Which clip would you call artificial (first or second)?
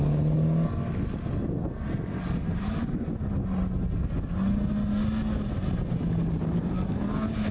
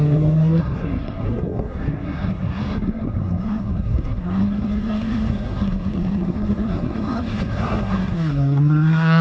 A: second